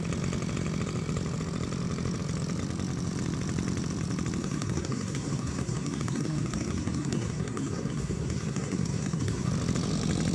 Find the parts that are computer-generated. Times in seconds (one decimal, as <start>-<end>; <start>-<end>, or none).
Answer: 4.4-9.5